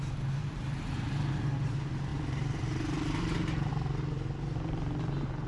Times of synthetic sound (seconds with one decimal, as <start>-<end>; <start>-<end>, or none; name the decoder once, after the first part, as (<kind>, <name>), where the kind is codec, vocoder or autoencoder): 0.4-1.3 (vocoder, BigVGAN v2); 2.1-3.7